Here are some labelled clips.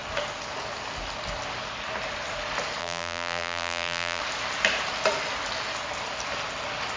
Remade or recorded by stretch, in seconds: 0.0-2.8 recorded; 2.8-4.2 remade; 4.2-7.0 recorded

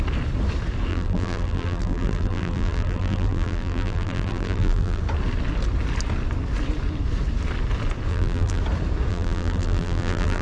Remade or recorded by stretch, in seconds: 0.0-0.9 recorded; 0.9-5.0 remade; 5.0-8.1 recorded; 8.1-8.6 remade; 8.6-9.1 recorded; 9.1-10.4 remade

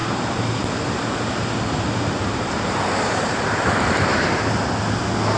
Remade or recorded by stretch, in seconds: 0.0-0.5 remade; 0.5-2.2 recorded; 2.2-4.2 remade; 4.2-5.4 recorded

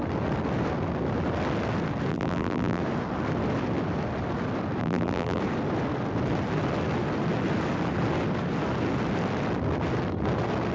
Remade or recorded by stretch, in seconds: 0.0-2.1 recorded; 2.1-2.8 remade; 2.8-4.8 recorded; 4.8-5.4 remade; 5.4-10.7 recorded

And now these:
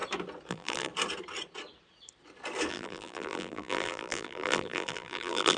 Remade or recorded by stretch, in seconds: 0.0-0.5 recorded; 0.5-0.9 remade; 0.9-2.7 recorded; 2.7-5.6 remade

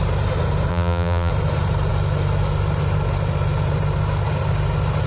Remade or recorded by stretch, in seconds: 0.0-0.7 recorded; 0.7-1.3 remade; 1.3-5.1 recorded